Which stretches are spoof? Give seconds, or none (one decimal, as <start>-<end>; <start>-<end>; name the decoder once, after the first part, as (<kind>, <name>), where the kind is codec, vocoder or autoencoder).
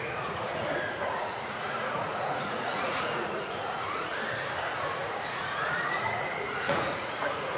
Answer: 0.0-4.1 (vocoder, Vocos); 4.7-7.6